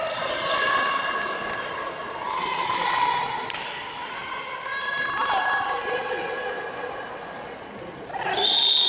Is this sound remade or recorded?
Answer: recorded